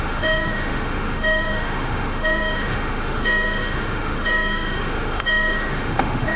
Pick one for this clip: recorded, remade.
remade